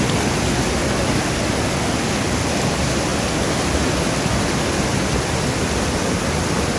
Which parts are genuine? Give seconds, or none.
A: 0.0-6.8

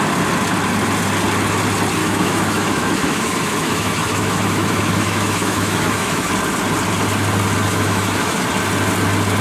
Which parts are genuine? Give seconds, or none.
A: 0.0-2.0; 6.3-7.7; 8.4-9.4

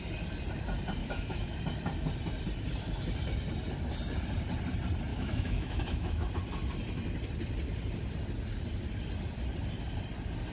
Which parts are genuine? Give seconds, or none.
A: 0.0-1.0; 1.6-5.1; 6.3-10.5

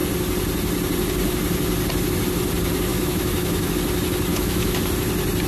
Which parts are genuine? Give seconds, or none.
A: 0.0-2.9; 3.7-4.3; 4.8-5.5